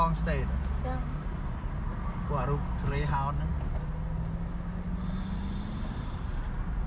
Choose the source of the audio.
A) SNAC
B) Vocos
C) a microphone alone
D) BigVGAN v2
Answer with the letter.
C